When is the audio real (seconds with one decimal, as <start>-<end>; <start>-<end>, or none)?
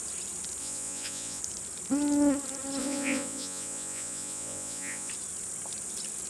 0.0-0.6; 1.4-2.8; 5.1-6.3